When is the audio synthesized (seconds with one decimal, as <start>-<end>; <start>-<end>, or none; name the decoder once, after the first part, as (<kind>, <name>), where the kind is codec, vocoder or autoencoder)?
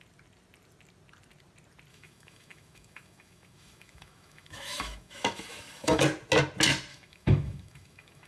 1.9-6.0 (autoencoder, DAC-VAE); 6.9-8.3